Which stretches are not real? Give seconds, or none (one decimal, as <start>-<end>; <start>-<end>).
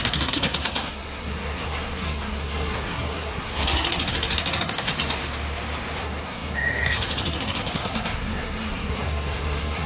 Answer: 0.0-4.9; 6.0-9.9